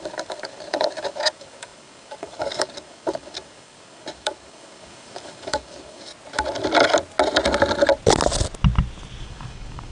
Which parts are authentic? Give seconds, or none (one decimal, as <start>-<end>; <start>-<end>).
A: 6.1-9.2